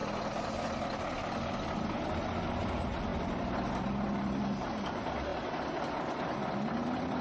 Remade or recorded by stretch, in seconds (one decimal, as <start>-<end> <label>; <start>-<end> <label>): 0.0-7.2 recorded